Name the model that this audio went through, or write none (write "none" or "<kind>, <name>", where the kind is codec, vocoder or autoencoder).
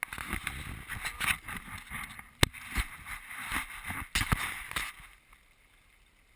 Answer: none